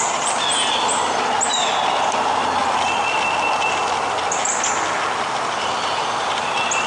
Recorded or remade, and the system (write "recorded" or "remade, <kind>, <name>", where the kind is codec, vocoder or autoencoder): recorded